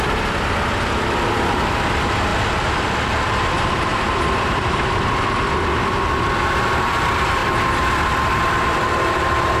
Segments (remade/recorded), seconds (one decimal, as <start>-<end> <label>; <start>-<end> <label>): 0.0-2.3 remade; 2.3-2.9 recorded; 2.9-7.4 remade; 7.4-8.4 recorded; 8.4-9.6 remade